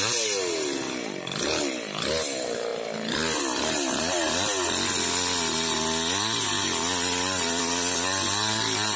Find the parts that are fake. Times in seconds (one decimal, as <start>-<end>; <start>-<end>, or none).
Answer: none